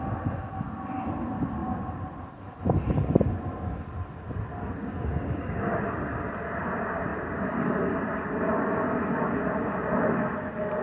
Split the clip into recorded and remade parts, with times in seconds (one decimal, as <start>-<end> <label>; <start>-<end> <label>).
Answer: 0.0-4.8 recorded; 4.8-5.6 remade; 5.6-10.8 recorded